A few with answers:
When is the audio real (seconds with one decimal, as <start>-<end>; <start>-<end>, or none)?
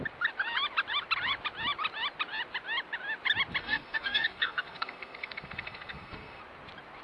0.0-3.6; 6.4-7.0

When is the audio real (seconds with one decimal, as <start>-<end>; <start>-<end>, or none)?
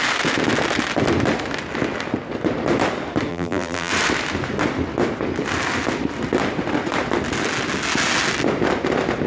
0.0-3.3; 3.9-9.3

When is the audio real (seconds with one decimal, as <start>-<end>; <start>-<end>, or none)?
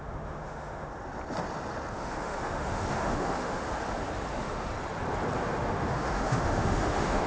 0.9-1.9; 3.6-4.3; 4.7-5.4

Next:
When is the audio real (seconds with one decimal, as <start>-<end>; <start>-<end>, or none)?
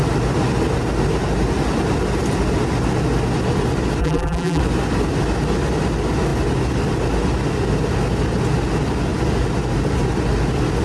0.0-4.0; 4.6-10.8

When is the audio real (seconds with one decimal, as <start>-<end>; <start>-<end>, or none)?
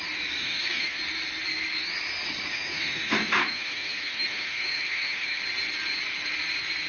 0.0-0.4; 1.0-2.5; 5.4-6.9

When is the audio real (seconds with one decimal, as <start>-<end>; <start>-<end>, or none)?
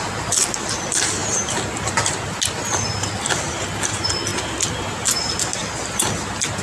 0.0-6.6